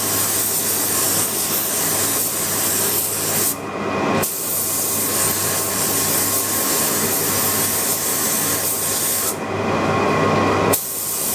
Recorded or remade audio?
recorded